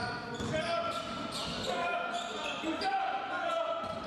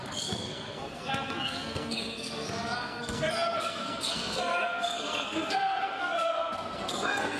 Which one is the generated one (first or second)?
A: second